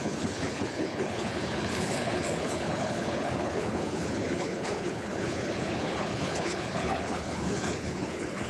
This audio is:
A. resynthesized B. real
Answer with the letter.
A